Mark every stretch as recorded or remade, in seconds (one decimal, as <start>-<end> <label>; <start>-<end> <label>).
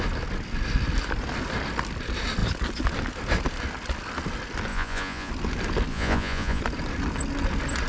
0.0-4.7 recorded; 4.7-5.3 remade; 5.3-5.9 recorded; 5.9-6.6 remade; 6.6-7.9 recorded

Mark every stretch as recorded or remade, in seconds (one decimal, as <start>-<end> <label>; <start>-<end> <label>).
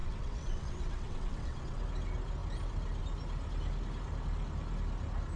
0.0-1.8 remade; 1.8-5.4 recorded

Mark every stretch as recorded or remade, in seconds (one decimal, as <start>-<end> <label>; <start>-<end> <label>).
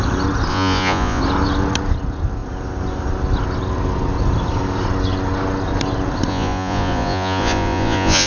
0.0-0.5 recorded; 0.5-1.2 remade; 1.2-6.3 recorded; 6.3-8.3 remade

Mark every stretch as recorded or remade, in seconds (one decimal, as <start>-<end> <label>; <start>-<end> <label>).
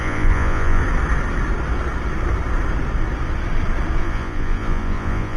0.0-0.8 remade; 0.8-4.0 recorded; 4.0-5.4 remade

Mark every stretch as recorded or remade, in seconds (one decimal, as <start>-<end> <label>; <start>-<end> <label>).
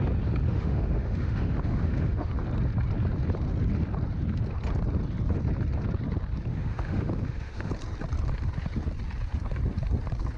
0.0-0.5 recorded; 0.5-2.3 remade; 2.3-6.5 recorded; 6.5-7.7 remade; 7.7-10.4 recorded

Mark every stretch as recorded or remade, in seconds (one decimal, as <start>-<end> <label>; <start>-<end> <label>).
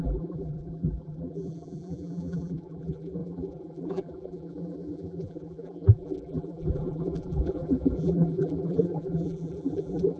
0.0-10.2 remade